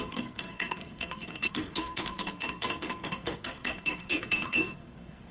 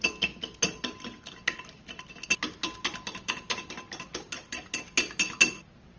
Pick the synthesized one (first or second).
first